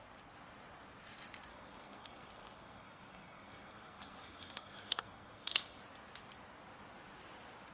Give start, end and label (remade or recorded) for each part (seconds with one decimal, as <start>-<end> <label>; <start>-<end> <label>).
0.0-1.5 recorded; 1.5-5.8 remade; 5.8-7.7 recorded